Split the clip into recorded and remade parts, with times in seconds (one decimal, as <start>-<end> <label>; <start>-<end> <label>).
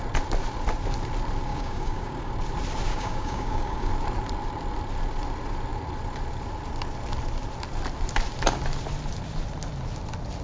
0.0-1.5 recorded; 1.5-2.3 remade; 2.3-2.9 recorded; 2.9-3.9 remade; 3.9-10.4 recorded